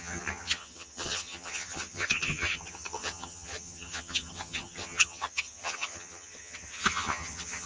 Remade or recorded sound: remade